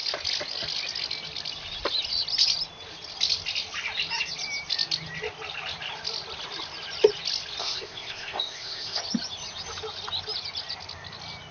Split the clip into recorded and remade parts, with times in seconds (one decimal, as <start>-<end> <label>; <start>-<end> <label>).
0.0-7.6 recorded; 7.6-9.0 remade; 9.0-11.5 recorded